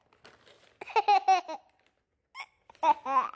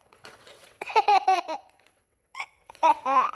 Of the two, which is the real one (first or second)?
first